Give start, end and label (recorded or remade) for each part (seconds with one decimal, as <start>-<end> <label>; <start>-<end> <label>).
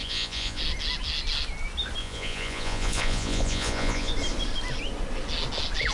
0.0-0.6 remade; 0.6-2.0 recorded; 2.0-4.1 remade; 4.1-5.9 recorded